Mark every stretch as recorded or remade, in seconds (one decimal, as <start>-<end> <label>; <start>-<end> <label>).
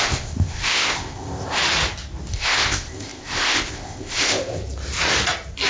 0.0-1.6 remade; 1.6-2.3 recorded; 2.3-4.6 remade; 4.6-5.7 recorded